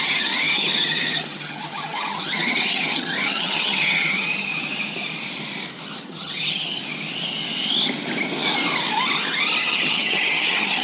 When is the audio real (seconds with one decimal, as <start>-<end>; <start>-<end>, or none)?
4.5-6.0; 6.8-9.6